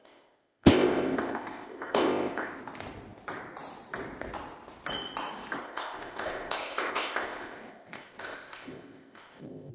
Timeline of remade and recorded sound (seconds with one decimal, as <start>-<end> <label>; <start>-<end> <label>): 0.0-2.6 remade; 2.6-5.6 recorded; 5.6-9.7 remade